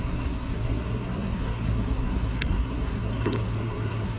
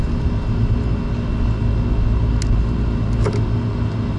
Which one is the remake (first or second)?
first